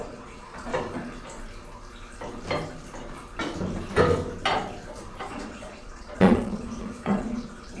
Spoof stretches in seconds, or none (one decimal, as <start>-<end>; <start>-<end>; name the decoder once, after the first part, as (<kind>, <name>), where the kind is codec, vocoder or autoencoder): 0.0-0.7 (vocoder, Vocos); 5.2-7.8